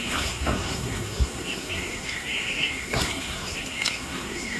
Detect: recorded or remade remade